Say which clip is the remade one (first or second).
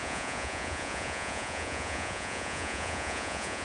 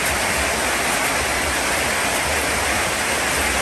first